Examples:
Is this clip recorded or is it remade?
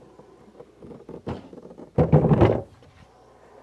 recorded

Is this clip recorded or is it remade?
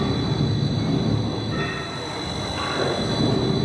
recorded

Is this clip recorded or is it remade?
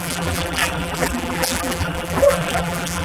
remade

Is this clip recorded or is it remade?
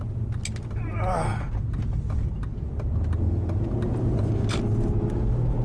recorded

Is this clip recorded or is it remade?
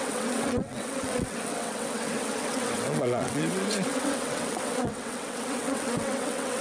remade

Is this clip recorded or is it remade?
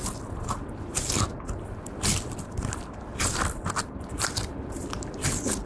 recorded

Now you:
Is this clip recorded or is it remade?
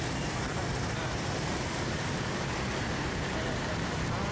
remade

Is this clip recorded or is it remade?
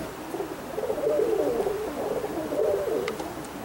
recorded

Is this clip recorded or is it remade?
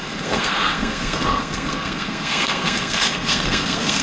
remade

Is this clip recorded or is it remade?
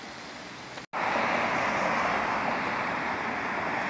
recorded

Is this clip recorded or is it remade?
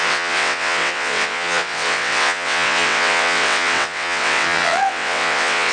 remade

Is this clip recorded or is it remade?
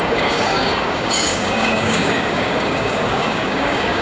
remade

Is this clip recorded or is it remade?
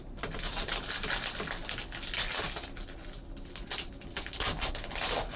recorded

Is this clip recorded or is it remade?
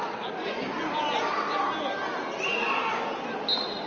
recorded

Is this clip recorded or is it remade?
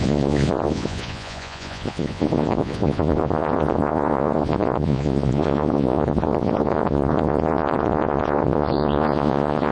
remade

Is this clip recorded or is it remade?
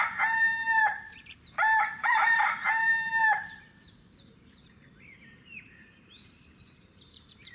remade